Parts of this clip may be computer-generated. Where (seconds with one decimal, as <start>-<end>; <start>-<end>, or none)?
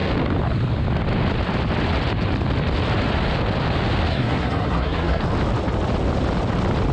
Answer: 4.1-5.2